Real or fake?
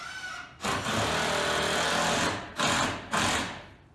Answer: real